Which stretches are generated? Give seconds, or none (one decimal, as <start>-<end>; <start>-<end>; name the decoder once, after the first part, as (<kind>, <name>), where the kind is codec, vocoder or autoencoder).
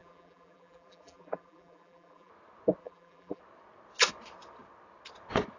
0.0-2.3 (vocoder, BigVGAN v2); 2.8-3.4